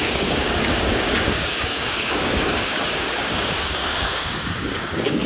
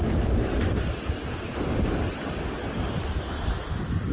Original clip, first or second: second